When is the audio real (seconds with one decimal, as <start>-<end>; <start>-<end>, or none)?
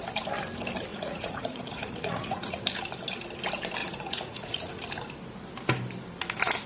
0.0-0.9; 2.6-3.8; 4.7-6.7